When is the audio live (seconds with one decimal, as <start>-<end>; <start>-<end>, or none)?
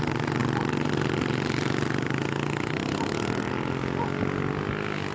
0.0-5.1